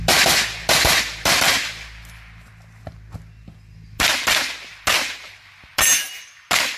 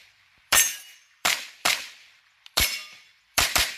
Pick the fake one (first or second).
second